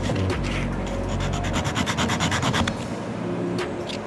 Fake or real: real